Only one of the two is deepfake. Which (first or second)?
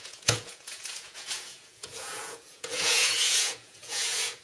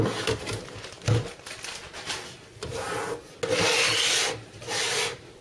first